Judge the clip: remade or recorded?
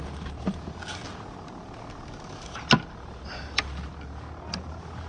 recorded